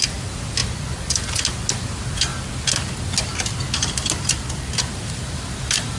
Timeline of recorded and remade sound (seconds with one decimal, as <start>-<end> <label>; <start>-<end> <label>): 0.0-0.6 remade; 0.6-1.7 recorded; 1.7-2.3 remade; 2.3-4.9 recorded; 4.9-6.0 remade